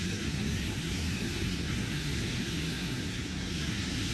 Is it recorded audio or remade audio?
remade